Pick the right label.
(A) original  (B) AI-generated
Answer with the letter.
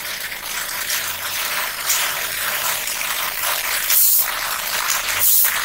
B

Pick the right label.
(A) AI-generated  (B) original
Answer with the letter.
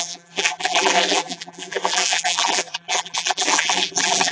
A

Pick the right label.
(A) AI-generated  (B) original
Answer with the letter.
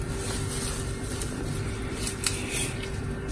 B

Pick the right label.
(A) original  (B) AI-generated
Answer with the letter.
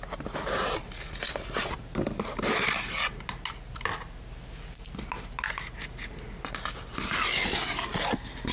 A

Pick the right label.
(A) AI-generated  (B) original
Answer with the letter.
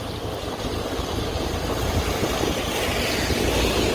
B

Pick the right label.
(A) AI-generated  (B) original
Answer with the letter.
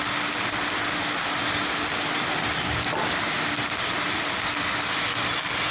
B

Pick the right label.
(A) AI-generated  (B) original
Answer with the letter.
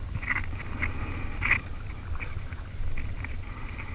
B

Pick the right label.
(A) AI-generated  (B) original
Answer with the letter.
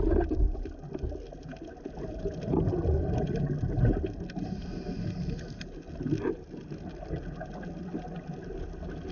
B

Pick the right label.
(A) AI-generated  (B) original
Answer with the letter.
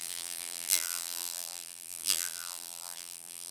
A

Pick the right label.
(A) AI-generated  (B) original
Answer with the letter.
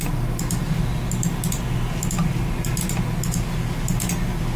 B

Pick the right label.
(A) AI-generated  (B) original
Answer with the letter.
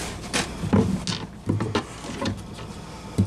B